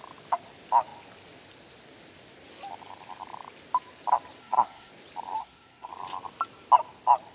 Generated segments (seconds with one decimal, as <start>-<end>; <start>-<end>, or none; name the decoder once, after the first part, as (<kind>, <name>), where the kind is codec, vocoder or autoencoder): 4.4-4.9 (codec, SNAC); 5.4-5.9